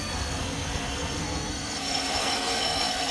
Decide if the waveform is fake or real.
fake